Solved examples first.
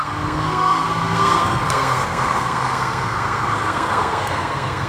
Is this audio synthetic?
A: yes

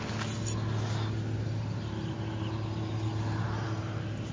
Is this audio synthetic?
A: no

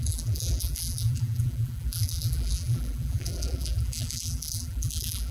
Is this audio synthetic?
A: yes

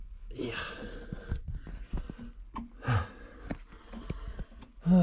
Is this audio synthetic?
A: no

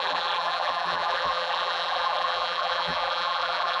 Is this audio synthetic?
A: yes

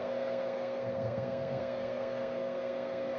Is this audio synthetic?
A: yes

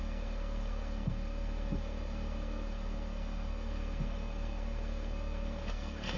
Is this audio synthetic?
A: yes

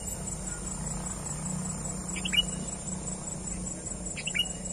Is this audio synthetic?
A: no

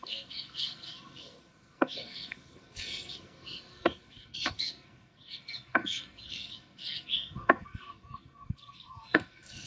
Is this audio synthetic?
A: yes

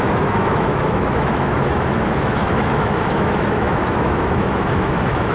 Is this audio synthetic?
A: yes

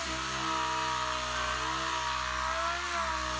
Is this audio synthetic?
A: no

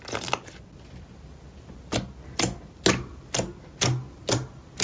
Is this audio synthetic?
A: no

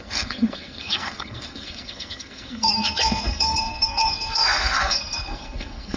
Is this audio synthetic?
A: yes